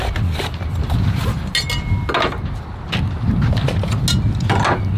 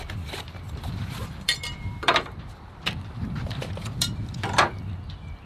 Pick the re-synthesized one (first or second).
second